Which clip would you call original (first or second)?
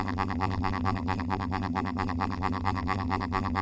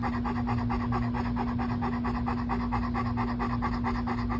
second